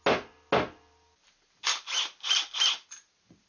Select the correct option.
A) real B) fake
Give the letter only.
A